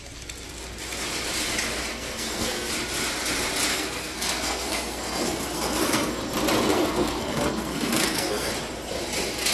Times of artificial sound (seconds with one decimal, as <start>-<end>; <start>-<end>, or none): 1.9-2.7; 3.7-6.2; 6.7-8.5